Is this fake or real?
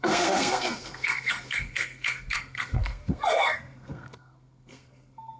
fake